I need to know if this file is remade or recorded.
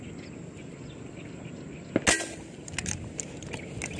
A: recorded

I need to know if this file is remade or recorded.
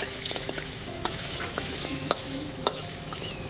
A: remade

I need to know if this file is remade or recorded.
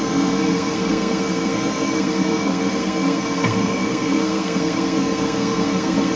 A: remade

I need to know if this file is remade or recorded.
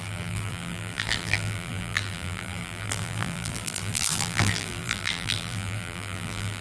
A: remade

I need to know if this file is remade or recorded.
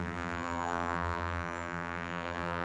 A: remade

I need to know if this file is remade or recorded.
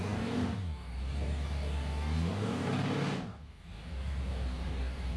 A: remade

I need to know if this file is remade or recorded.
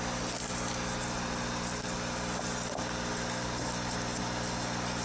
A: recorded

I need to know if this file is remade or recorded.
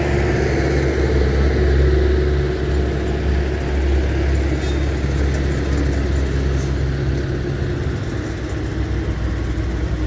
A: recorded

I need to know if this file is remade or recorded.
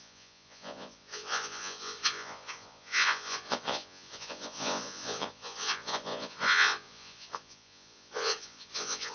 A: remade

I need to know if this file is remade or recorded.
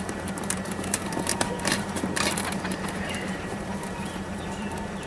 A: remade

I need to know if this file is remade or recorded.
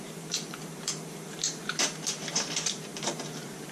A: remade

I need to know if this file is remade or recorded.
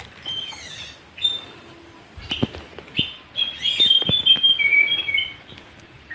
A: recorded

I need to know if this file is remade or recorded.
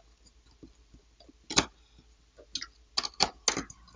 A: recorded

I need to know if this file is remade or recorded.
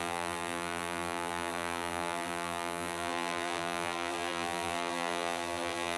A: remade